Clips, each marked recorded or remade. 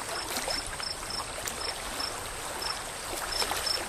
recorded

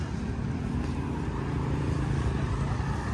recorded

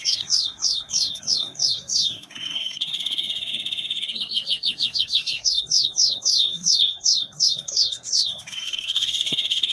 remade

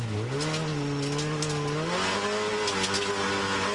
recorded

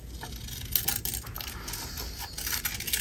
recorded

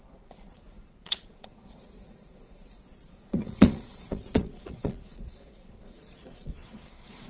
remade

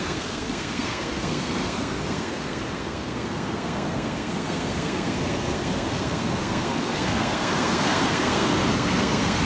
remade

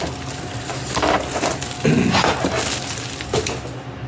recorded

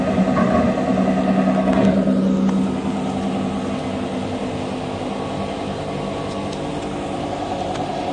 recorded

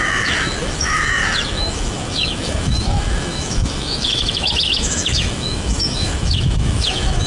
remade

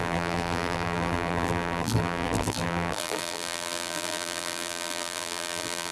remade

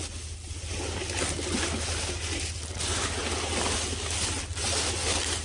recorded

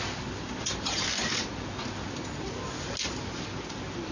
recorded